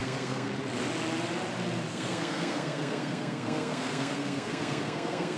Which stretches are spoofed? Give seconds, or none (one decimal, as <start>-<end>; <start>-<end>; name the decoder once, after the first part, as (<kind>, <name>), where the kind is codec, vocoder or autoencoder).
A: 0.0-0.5 (codec, SNAC); 1.9-5.4